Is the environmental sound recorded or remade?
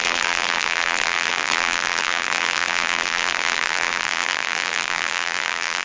remade